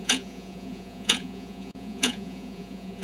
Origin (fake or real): fake